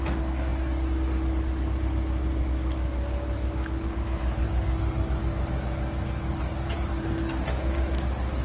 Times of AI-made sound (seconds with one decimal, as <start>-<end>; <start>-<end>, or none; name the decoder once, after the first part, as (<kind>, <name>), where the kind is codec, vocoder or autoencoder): none